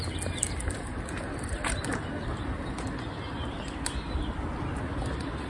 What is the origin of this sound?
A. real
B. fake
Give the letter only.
A